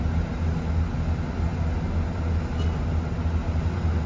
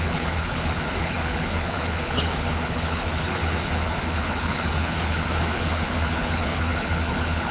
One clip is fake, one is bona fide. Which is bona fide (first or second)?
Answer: first